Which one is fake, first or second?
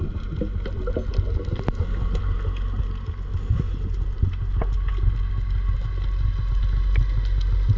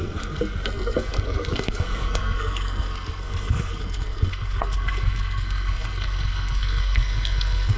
second